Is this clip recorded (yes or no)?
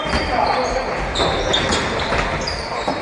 yes